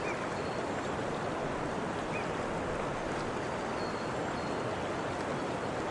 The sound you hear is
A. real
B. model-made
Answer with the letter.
A